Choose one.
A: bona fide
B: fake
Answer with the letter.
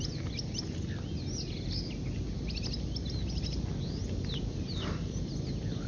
A